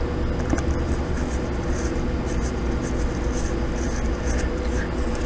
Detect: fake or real real